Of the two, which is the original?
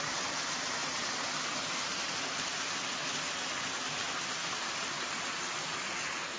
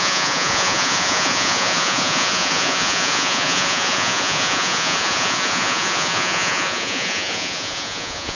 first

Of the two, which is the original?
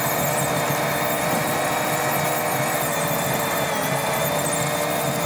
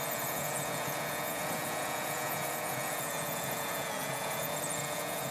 first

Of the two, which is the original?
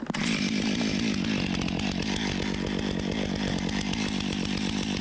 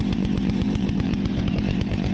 first